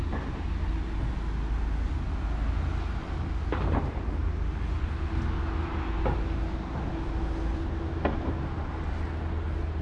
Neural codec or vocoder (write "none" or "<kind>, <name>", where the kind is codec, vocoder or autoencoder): none